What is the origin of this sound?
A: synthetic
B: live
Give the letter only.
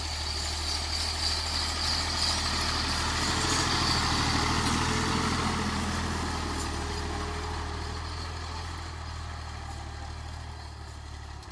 B